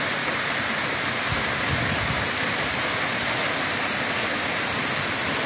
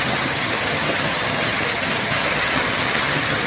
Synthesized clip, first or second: second